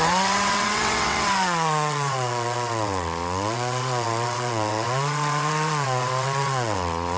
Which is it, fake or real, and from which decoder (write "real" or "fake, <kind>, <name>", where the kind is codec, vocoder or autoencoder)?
fake, vocoder, WaveNeXt